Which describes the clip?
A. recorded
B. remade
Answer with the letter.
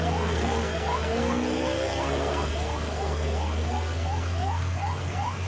B